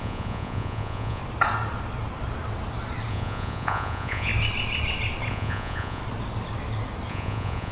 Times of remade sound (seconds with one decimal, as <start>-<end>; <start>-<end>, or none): 0.0-1.2; 3.1-4.3; 5.3-6.0; 7.1-7.7